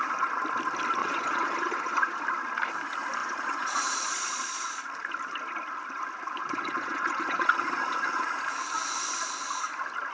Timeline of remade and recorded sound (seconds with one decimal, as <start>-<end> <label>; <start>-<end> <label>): 0.0-1.0 recorded; 1.0-2.2 remade; 2.2-3.2 recorded; 3.2-4.9 remade; 4.9-6.4 recorded; 6.4-8.2 remade; 8.2-10.1 recorded